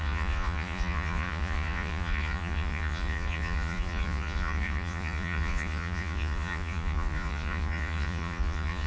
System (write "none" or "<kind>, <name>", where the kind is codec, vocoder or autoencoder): vocoder, Vocos